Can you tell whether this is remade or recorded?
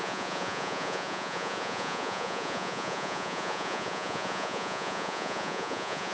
remade